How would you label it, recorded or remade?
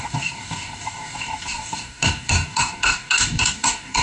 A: remade